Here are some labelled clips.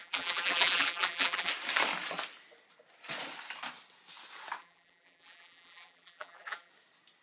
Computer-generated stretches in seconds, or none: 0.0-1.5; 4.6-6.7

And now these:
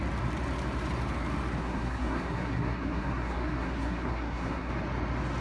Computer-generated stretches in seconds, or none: 1.6-4.7